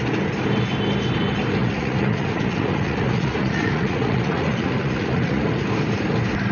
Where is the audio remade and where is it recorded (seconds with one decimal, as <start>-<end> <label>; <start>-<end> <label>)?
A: 0.0-1.6 recorded; 1.6-5.5 remade; 5.5-6.5 recorded